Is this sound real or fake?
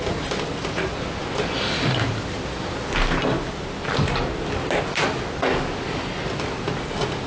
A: real